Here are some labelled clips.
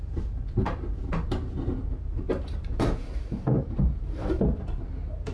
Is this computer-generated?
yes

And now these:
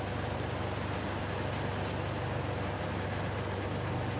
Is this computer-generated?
no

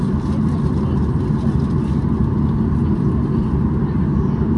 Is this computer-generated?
no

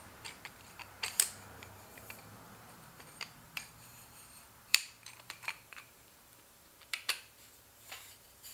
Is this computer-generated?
yes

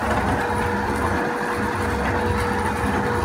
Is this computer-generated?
no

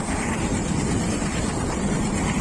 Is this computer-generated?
yes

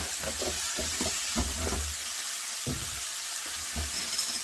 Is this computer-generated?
no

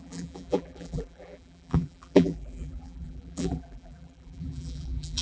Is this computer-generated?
yes